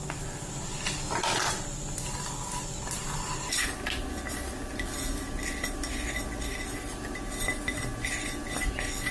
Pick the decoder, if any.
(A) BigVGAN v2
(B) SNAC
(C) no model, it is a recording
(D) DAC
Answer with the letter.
C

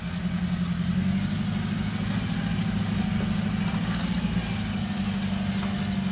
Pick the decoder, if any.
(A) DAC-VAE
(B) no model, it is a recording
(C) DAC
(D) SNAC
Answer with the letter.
B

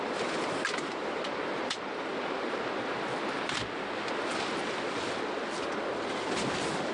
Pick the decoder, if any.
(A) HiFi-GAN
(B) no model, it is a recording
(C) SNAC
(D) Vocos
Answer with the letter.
B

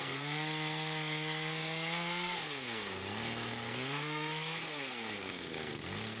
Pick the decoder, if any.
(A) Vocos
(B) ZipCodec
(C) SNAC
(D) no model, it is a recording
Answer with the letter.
C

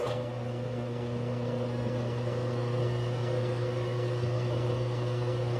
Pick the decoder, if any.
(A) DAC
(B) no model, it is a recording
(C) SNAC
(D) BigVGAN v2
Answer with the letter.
C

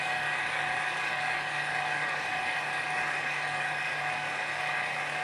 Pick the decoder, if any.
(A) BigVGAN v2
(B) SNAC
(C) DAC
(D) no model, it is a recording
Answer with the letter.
C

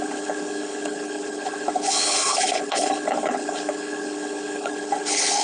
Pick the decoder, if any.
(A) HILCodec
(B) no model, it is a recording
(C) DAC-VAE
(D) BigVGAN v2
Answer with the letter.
A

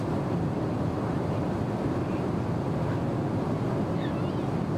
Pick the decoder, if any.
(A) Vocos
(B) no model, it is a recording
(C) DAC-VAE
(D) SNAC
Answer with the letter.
B